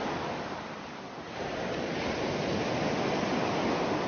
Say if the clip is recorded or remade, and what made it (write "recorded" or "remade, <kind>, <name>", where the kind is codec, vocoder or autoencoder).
recorded